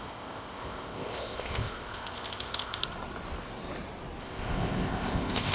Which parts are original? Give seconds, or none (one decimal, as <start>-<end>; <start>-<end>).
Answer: 2.8-4.2